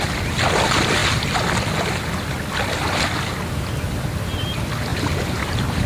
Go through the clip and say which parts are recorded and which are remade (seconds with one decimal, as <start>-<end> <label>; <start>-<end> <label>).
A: 0.0-4.9 recorded; 4.9-5.9 remade